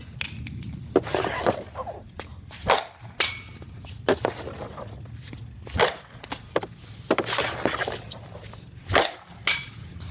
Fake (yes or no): no